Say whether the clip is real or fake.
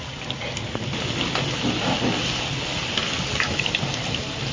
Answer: real